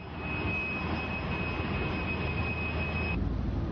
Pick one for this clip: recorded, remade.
recorded